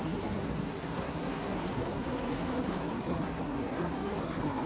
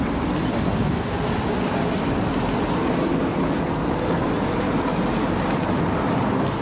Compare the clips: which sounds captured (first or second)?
second